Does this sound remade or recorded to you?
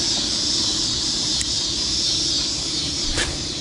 remade